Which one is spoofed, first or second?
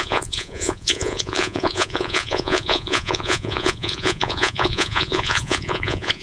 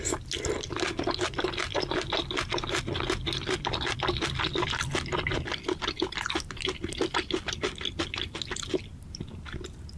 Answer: first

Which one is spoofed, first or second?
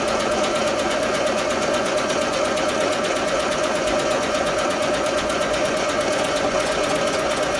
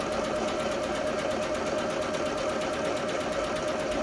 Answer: first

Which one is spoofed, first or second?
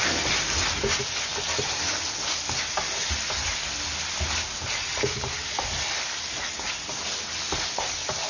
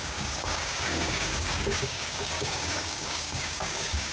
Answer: second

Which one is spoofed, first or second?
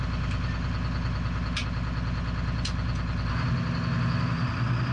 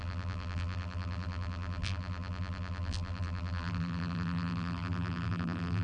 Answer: second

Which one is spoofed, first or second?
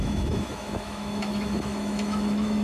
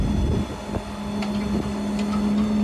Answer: first